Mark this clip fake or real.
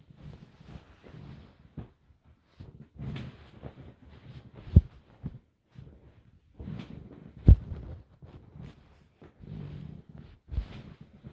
real